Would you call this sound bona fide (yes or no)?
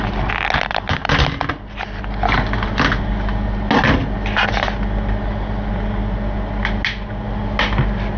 yes